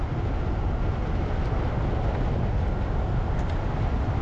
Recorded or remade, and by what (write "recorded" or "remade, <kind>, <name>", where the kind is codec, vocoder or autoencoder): recorded